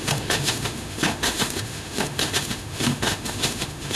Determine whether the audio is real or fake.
fake